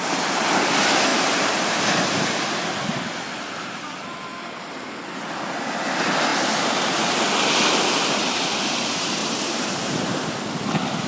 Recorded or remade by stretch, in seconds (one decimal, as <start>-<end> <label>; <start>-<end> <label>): 0.0-1.1 recorded; 1.1-1.7 remade; 1.7-9.2 recorded; 9.2-10.5 remade; 10.5-11.1 recorded